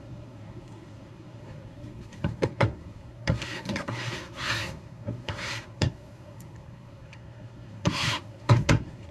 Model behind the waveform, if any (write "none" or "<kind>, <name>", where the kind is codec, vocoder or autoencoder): codec, SNAC